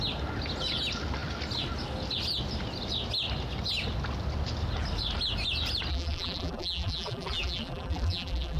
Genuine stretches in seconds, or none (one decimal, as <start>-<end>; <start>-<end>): 0.0-5.9